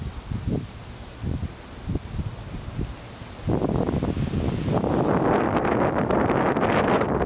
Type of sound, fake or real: real